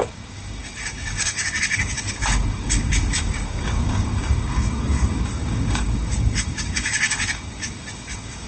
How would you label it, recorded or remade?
remade